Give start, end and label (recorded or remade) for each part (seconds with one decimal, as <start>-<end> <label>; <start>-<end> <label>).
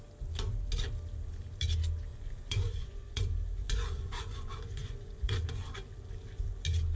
0.0-2.1 recorded; 2.1-3.2 remade; 3.2-3.6 recorded; 3.6-5.3 remade; 5.3-7.0 recorded